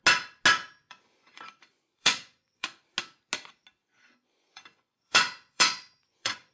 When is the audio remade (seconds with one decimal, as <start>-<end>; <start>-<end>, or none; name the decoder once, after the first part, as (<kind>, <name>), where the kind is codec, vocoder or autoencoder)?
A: 0.8-2.8 (vocoder, Vocos); 3.8-6.5